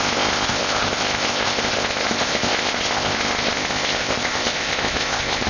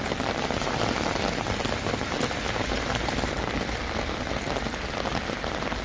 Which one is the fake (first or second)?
first